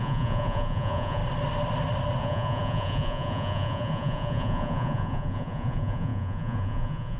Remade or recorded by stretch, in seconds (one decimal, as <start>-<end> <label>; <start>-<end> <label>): 0.0-1.2 remade; 1.2-2.2 recorded; 2.2-7.2 remade